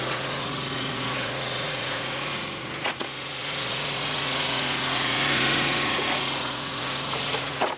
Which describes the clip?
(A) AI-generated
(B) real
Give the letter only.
A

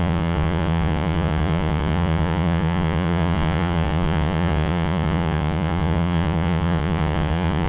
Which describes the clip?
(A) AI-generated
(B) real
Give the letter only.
A